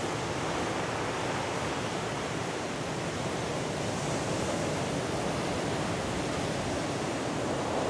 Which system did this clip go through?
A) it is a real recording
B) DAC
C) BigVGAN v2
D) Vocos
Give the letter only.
A